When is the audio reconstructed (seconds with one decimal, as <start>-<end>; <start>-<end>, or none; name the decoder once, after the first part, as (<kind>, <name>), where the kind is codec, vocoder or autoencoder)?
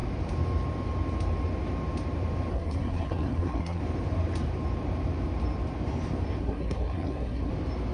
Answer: 2.5-3.8 (codec, SNAC); 6.4-7.5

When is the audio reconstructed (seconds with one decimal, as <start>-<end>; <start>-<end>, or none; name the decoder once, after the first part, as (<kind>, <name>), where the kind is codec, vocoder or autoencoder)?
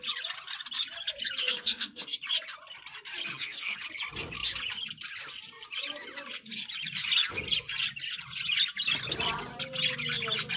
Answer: 1.4-2.0 (codec, SNAC); 3.3-3.8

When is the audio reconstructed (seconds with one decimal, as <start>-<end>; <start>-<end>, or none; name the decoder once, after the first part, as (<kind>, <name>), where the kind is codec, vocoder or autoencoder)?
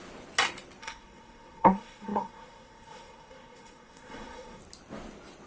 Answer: 0.8-4.6 (codec, SNAC)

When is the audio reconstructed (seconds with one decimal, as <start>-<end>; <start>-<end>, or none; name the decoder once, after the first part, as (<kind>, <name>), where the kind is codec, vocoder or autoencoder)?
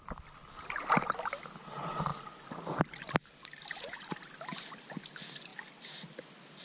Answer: none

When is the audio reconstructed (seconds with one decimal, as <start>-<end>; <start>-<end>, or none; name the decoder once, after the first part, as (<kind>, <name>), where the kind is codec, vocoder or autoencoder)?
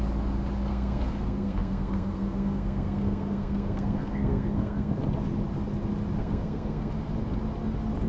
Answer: 0.7-4.9 (codec, SNAC); 6.2-6.9